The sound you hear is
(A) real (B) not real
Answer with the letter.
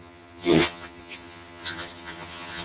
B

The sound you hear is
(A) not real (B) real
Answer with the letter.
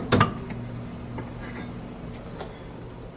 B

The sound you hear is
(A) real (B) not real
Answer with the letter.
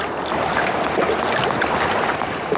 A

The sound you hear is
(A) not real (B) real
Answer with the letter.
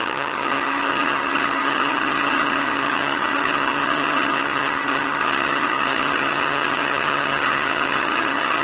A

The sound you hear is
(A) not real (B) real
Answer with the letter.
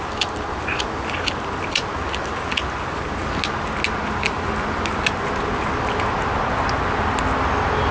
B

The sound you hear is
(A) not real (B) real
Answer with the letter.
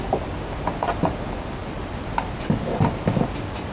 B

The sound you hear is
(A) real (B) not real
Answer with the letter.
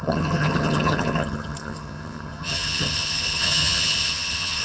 B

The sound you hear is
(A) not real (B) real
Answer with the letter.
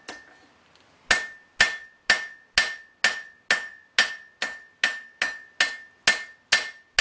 B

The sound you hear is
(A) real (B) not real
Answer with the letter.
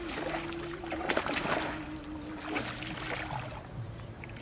A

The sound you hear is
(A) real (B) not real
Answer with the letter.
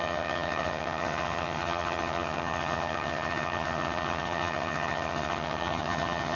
B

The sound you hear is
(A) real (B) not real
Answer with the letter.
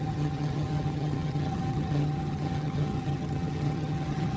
B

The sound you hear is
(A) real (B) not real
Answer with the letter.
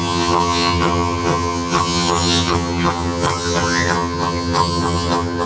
B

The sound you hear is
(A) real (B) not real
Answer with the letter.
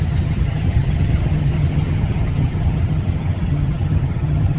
B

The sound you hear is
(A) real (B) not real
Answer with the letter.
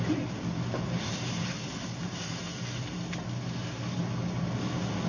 A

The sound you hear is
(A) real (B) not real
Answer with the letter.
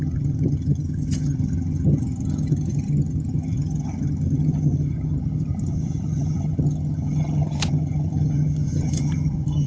B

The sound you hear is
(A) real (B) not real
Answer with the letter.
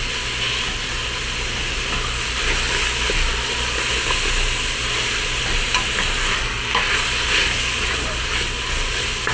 A